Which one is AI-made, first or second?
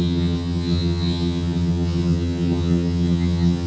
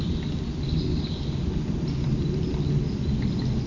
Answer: first